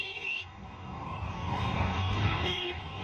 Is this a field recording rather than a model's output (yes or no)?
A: no